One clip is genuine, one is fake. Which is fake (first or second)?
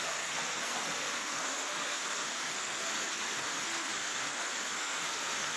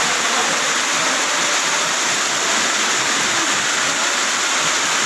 first